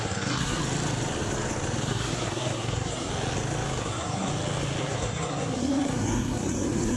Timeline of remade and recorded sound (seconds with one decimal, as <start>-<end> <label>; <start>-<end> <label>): 0.0-0.6 remade; 0.6-1.9 recorded; 1.9-3.1 remade; 3.1-3.8 recorded; 3.8-4.3 remade; 4.3-4.8 recorded; 4.8-7.0 remade